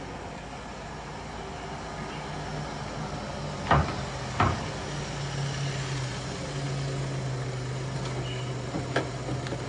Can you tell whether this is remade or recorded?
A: recorded